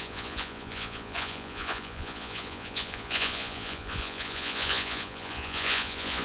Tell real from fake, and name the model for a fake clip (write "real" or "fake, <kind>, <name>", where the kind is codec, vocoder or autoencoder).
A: fake, vocoder, Vocos